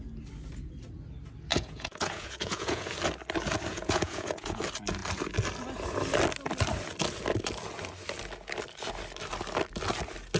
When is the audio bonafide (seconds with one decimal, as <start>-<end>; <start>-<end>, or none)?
0.0-1.5; 2.9-3.7; 4.6-10.4